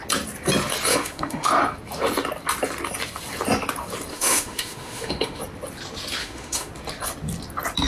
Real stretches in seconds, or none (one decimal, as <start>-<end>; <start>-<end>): 0.0-0.9; 1.5-4.1; 5.4-6.2; 6.7-7.9